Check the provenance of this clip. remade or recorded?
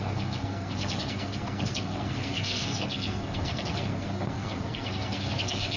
remade